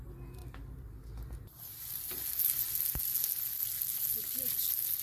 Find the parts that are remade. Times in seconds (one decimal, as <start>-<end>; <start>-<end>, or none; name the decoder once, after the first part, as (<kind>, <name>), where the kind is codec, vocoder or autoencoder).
none